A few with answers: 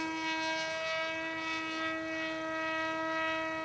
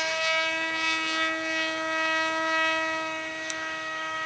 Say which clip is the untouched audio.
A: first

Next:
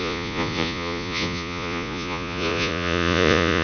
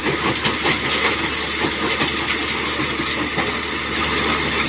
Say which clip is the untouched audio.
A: second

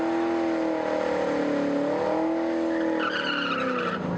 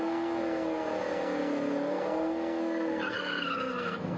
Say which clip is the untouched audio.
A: first